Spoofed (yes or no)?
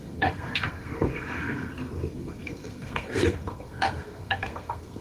yes